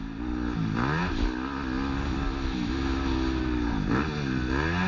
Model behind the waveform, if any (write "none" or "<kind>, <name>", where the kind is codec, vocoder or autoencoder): none